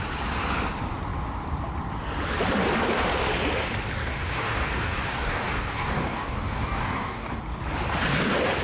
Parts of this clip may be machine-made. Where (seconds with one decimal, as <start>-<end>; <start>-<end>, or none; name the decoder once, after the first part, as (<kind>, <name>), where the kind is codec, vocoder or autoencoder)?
4.0-7.4 (codec, DAC)